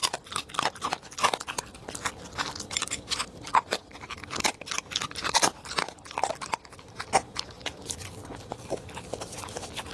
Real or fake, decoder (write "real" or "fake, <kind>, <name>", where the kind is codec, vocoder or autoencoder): real